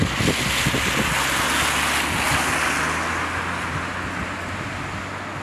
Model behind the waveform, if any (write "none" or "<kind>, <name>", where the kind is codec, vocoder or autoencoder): none